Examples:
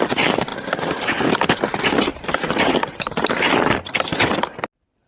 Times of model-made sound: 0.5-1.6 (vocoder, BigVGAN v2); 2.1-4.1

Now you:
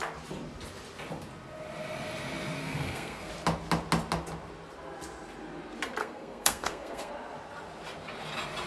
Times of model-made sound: 2.6-3.3 (codec, SNAC); 6.0-7.1

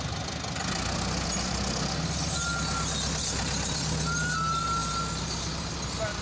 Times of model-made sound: 4.8-5.7 (vocoder, BigVGAN v2)

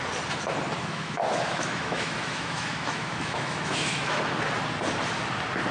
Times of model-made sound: 0.8-4.2 (autoencoder, DAC-VAE)

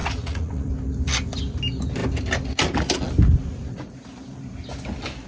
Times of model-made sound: 0.0-0.7 (vocoder, Vocos)

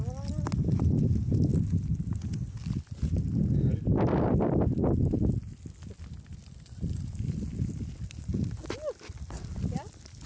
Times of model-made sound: none

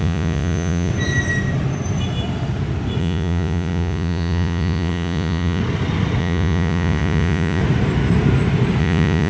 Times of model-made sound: 0.0-0.9 (vocoder, Vocos); 3.0-5.6; 6.2-7.6; 8.8-9.3

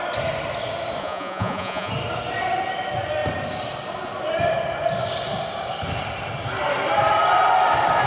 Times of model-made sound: 1.0-1.9 (vocoder, Vocos)